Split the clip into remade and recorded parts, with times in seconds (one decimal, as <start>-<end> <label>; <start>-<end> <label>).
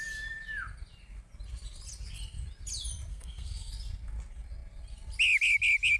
0.0-3.1 recorded; 3.1-3.7 remade; 3.7-6.0 recorded